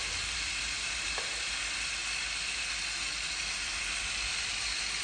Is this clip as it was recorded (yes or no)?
yes